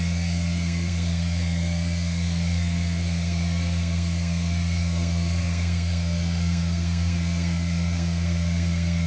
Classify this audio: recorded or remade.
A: remade